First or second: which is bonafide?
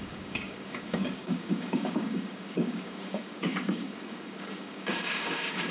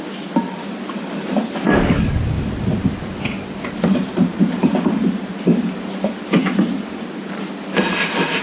second